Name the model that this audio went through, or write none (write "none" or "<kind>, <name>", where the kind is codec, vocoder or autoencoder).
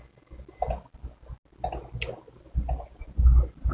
none